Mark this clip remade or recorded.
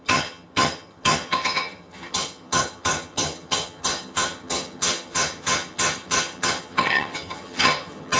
remade